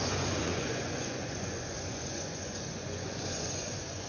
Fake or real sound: fake